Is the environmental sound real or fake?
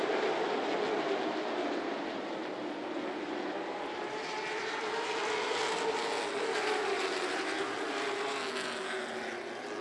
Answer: real